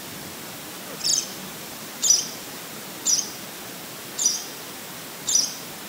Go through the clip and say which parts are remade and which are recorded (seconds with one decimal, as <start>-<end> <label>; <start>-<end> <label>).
0.0-1.1 recorded; 1.1-3.1 remade; 3.1-5.9 recorded